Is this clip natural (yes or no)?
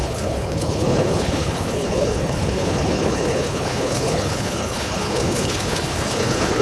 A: no